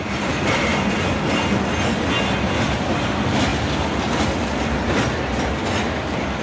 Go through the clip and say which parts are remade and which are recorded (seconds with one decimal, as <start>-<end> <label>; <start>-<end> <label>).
0.0-6.4 recorded